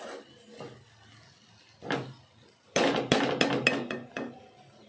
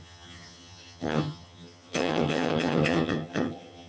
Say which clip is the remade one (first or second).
second